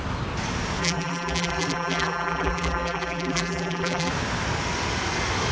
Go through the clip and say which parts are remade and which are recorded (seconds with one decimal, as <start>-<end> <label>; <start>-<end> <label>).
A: 0.0-0.8 recorded; 0.8-4.1 remade; 4.1-5.5 recorded